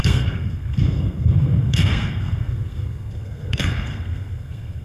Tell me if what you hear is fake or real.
fake